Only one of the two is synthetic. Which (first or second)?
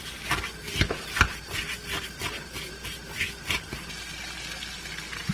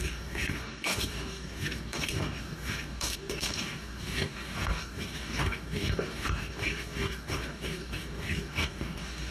second